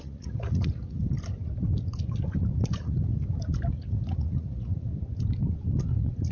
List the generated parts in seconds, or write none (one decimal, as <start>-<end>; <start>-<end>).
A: 0.0-1.0; 2.7-3.1; 3.7-4.9; 5.8-6.3